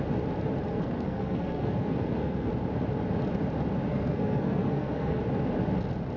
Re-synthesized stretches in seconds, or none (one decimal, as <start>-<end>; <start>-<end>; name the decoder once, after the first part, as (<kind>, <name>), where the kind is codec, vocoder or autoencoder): 0.7-2.5 (codec, SNAC); 3.9-5.2